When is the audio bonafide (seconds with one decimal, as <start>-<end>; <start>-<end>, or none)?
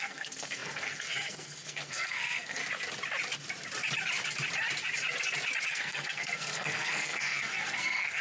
2.6-5.7